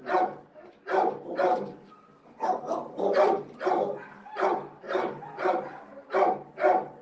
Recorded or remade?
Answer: recorded